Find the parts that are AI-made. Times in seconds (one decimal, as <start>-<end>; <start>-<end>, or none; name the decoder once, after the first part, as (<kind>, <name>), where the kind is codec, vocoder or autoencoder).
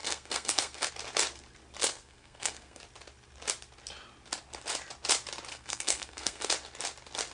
0.0-0.9 (codec, SNAC); 1.8-2.8; 5.5-6.5